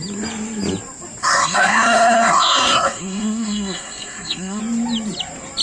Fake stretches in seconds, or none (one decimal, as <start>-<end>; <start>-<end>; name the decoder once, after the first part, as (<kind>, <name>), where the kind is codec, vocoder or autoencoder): 1.2-4.6 (codec, SNAC)

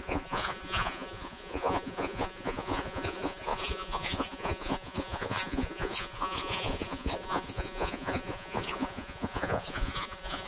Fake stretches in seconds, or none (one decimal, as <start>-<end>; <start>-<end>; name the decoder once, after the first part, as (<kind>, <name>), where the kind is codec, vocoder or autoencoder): 0.0-10.5 (vocoder, Vocos)

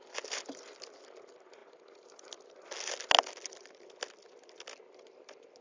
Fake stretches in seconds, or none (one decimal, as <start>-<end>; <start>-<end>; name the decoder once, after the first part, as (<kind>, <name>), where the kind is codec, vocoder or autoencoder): none

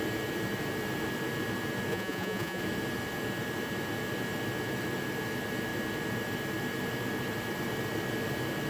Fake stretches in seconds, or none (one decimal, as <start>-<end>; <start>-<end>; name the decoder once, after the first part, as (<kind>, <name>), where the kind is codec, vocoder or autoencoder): 1.9-2.6 (vocoder, Vocos)

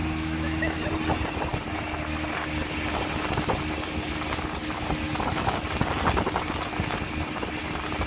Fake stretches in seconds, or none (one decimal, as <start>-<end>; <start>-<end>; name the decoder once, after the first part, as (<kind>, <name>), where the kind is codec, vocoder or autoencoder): 0.0-0.8 (autoencoder, DAC-VAE)

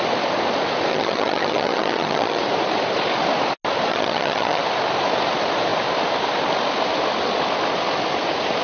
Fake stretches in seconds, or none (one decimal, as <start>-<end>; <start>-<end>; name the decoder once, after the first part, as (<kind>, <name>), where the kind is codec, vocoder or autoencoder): 0.9-2.4 (vocoder, HiFi-GAN); 3.9-4.6